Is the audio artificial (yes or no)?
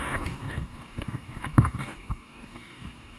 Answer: yes